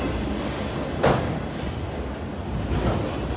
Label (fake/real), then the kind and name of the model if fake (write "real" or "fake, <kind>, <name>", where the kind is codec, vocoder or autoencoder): real